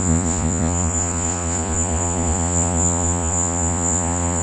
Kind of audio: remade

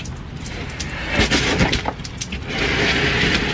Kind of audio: recorded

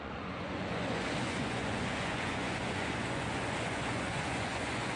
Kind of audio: remade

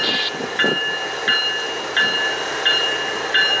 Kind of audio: recorded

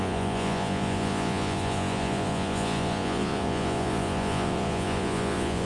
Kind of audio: remade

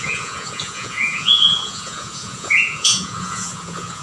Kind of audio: remade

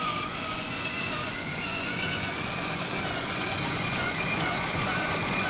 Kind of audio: remade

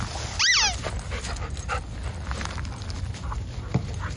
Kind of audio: recorded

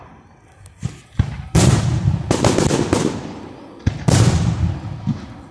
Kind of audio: recorded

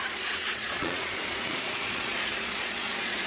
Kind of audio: remade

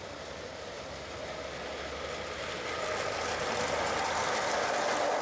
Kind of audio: recorded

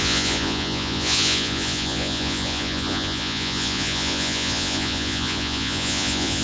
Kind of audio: remade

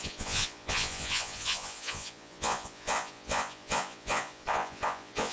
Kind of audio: remade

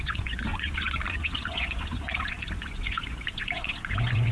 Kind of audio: remade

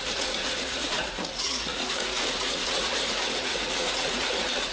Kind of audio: remade